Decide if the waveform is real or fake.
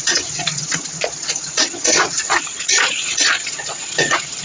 fake